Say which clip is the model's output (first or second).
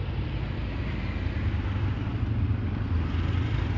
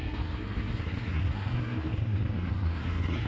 second